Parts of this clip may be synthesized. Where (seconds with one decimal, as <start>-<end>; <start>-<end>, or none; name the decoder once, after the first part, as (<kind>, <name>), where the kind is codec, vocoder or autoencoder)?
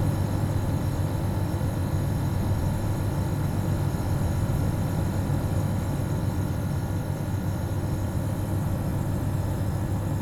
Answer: none